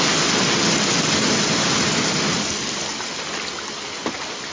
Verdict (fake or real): real